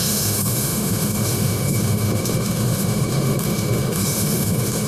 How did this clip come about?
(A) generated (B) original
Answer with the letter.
A